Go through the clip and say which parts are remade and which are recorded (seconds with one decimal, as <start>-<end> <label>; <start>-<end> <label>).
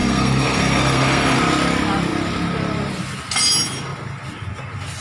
0.0-1.4 remade; 1.4-5.0 recorded